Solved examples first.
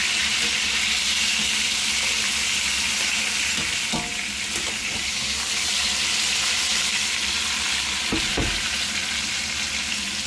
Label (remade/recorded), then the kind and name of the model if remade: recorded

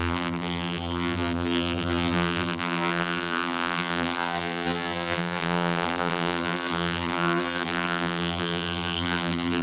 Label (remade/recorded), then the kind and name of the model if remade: remade, vocoder, BigVGAN v2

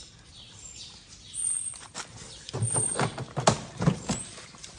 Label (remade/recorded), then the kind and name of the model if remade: remade, vocoder, BigVGAN v2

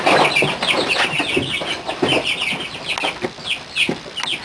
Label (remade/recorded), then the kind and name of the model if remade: recorded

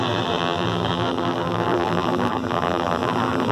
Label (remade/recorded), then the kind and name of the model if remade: remade, vocoder, BigVGAN v2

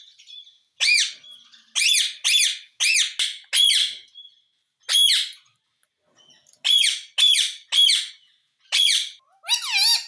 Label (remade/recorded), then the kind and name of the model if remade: recorded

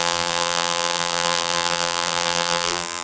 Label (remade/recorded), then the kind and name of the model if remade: remade, vocoder, BigVGAN v2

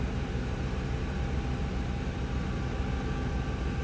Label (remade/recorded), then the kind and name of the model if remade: recorded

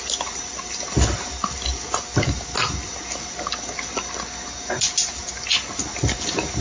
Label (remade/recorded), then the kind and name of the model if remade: recorded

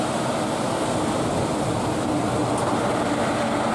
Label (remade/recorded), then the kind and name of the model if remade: recorded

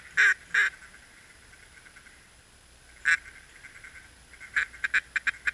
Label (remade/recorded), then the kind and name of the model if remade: recorded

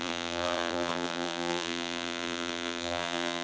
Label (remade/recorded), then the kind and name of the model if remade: remade, vocoder, BigVGAN v2